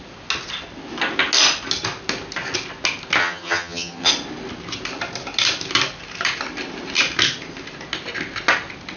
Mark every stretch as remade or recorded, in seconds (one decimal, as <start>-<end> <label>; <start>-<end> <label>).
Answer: 0.0-3.2 recorded; 3.2-4.1 remade; 4.1-9.0 recorded